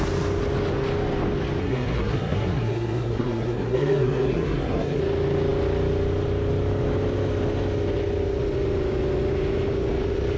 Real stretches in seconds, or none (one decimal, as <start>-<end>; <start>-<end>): 0.0-1.6; 5.0-10.4